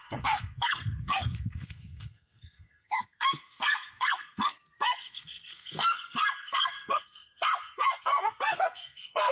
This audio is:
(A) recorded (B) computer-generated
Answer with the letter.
B